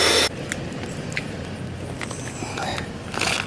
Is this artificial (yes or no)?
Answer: no